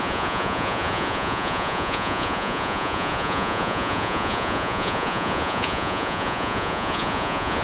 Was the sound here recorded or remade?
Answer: remade